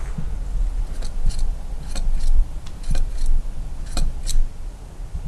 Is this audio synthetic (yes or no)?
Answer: no